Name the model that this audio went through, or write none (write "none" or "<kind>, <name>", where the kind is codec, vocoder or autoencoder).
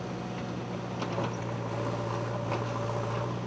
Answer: none